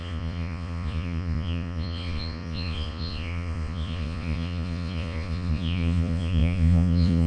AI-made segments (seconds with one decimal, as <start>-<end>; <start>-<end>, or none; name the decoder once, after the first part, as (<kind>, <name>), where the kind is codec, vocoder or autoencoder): 0.0-7.3 (vocoder, Vocos)